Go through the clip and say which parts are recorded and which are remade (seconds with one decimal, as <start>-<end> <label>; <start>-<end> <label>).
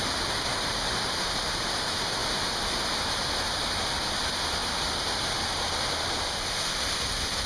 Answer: 0.0-7.5 recorded